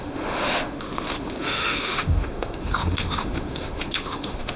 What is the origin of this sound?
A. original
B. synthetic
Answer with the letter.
B